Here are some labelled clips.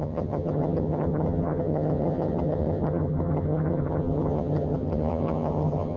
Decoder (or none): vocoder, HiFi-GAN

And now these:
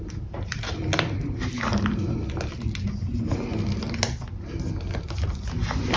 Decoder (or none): none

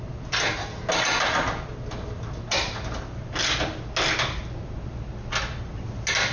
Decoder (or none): none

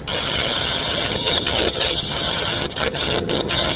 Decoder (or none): vocoder, HiFi-GAN